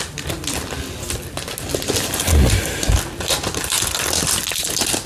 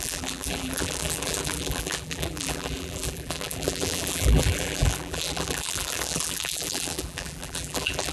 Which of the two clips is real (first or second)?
first